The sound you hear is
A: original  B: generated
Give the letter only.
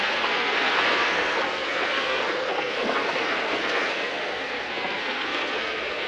B